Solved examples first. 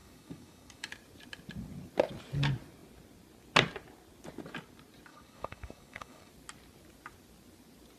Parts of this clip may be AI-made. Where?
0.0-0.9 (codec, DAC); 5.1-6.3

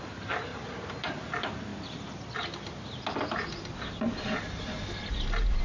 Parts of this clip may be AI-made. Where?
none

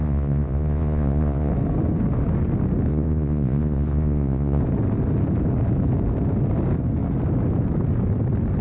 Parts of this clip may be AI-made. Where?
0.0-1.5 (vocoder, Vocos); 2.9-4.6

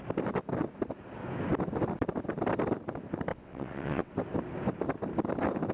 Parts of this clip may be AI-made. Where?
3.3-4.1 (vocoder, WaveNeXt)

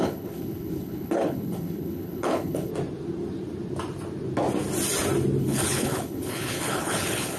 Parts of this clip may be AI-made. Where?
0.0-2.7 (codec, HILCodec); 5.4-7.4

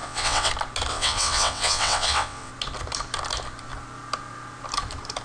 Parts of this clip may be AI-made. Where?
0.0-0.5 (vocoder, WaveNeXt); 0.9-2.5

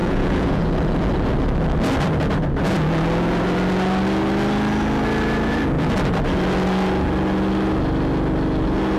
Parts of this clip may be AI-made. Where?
0.0-0.6 (vocoder, Vocos)